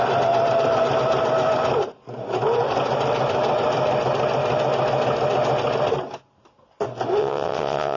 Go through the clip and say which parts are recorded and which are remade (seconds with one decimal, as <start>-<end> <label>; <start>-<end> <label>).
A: 0.0-7.2 recorded; 7.2-8.0 remade